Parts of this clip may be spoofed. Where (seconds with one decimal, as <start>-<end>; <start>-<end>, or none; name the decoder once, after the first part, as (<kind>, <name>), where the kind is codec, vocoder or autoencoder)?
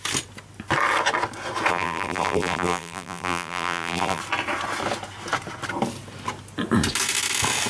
1.7-4.2 (vocoder, BigVGAN v2)